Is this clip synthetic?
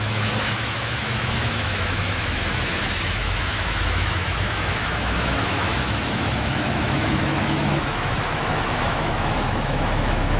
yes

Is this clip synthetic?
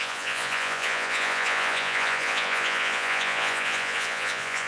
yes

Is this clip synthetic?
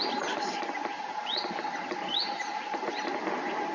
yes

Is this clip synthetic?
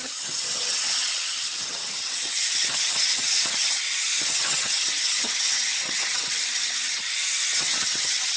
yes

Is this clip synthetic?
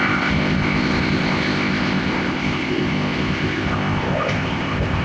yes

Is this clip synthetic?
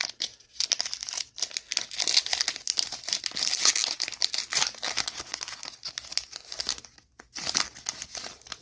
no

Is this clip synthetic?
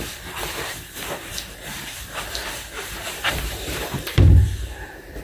yes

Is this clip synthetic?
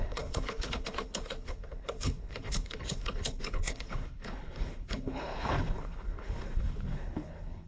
yes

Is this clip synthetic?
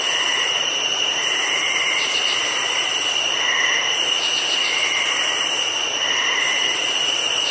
yes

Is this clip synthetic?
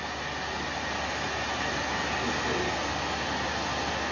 no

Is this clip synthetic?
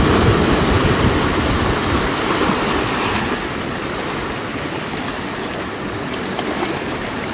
no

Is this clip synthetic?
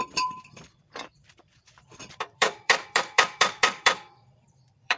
yes